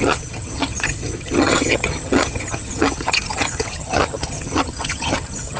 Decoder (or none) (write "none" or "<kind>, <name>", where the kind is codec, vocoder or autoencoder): vocoder, HiFi-GAN